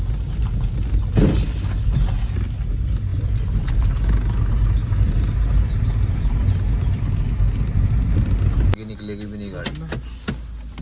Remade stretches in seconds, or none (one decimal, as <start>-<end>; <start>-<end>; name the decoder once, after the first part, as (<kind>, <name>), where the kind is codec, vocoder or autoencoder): 3.1-3.7 (vocoder, BigVGAN v2)